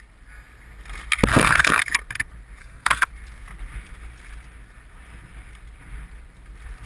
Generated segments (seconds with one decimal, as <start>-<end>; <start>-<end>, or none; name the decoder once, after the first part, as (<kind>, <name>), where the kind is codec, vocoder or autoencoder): 1.3-1.8 (codec, SNAC); 2.6-3.1